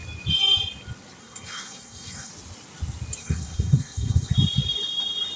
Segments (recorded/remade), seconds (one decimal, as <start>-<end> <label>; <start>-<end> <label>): 0.0-1.2 recorded; 1.2-2.3 remade; 2.3-3.2 recorded; 3.2-4.3 remade; 4.3-5.4 recorded